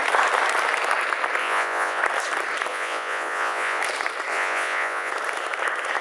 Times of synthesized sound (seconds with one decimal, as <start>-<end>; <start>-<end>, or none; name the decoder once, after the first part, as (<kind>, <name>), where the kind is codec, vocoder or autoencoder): 1.4-2.0 (vocoder, Vocos); 2.7-3.8; 4.3-5.1